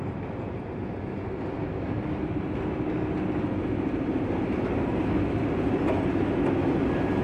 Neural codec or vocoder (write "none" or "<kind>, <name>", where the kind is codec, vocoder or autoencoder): none